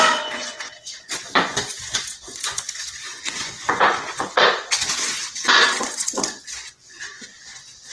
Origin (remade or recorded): remade